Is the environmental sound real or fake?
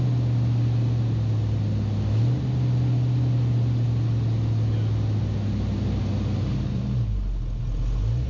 real